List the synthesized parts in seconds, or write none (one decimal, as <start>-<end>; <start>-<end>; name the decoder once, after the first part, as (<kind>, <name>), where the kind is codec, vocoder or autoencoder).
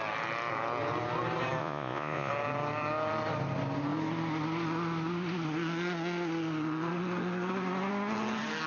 1.6-2.3 (vocoder, Vocos)